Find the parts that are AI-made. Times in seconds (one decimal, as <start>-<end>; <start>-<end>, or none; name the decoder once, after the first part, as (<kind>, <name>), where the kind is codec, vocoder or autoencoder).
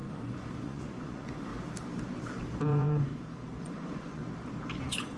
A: 0.0-1.5 (vocoder, Vocos); 2.7-3.1; 3.6-4.2; 4.8-5.2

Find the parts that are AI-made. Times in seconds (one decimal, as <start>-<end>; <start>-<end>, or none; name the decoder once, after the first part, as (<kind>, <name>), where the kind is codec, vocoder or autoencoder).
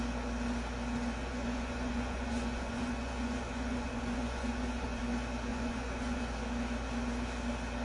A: 1.2-5.0 (vocoder, Vocos); 5.5-6.2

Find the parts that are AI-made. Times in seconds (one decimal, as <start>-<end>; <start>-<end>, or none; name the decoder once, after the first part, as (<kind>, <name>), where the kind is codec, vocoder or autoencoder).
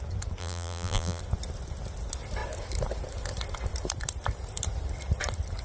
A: 0.4-1.2 (vocoder, BigVGAN v2)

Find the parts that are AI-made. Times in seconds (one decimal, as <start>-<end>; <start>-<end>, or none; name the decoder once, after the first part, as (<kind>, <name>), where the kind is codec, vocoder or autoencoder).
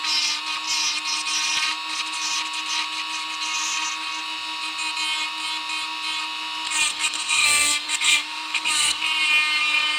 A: 6.9-9.0 (codec, SNAC)